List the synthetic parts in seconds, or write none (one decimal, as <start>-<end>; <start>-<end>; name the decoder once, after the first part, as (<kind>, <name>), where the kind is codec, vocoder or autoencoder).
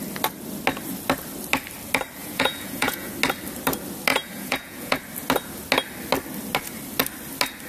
2.2-3.1 (vocoder, Vocos); 4.1-5.0